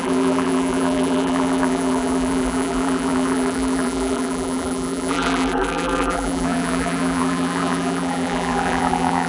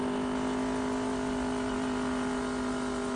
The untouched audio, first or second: second